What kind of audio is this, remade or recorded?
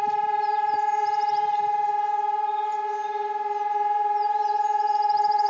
recorded